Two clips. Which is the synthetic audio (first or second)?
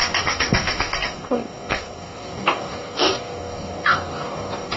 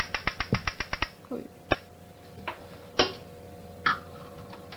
first